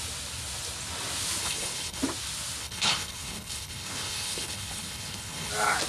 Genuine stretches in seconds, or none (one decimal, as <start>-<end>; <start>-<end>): 0.0-1.4; 2.0-2.6; 5.5-5.9

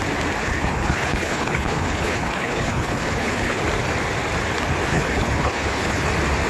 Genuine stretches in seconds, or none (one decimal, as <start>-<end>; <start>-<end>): 0.0-0.4; 3.6-4.9; 6.1-6.5

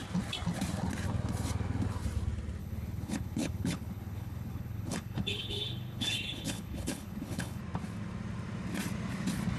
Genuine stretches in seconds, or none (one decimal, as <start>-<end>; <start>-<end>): 0.0-2.6; 7.6-9.6

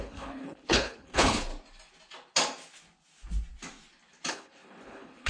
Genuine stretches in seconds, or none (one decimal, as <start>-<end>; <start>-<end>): 1.5-4.3